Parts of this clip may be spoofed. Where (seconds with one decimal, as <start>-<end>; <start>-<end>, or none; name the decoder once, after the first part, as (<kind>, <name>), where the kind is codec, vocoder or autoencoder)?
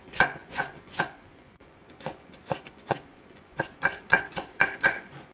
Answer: 0.0-5.3 (vocoder, Vocos)